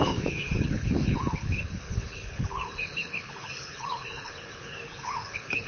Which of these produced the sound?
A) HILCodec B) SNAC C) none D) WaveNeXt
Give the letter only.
A